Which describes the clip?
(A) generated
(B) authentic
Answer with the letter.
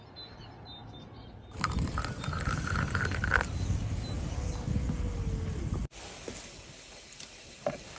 B